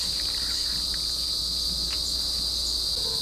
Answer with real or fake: real